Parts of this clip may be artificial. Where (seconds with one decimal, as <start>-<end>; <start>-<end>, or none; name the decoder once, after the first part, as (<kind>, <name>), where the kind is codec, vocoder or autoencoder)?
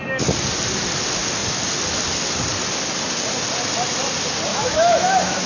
4.5-5.5 (autoencoder, DAC-VAE)